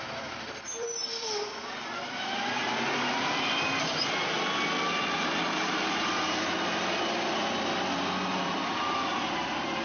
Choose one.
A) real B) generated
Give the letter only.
B